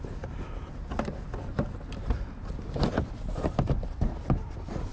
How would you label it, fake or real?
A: real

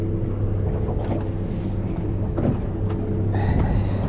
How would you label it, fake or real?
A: real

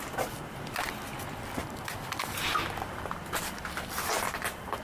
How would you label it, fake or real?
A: real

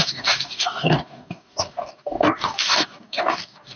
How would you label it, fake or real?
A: fake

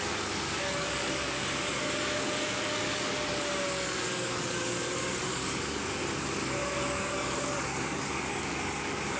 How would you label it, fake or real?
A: fake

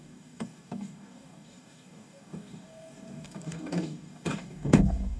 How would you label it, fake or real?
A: fake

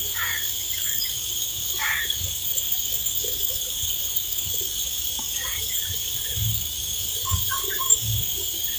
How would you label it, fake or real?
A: fake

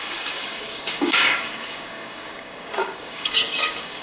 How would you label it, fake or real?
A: fake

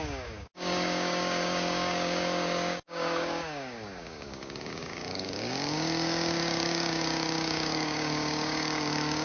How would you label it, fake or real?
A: fake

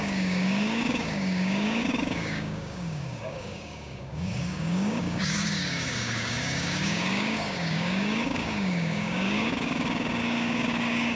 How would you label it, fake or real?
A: fake